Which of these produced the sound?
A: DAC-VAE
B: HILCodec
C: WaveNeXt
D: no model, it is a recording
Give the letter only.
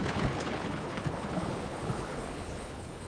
B